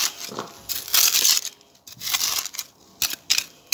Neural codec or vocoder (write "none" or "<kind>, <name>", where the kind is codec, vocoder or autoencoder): none